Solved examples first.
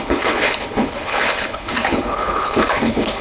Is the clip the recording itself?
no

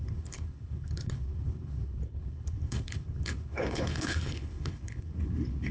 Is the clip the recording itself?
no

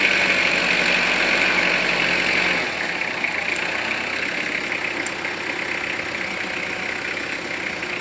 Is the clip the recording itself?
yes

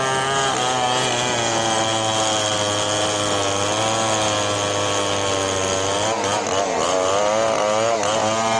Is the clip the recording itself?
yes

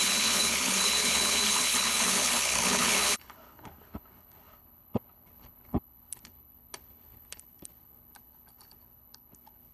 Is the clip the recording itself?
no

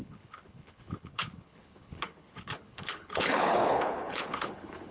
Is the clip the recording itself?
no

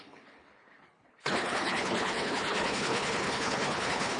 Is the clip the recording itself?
no